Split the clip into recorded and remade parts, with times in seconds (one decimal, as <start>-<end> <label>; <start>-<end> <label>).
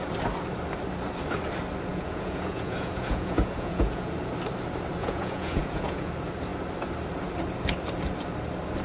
0.0-1.9 recorded; 1.9-4.1 remade; 4.1-5.0 recorded; 5.0-6.1 remade; 6.1-8.8 recorded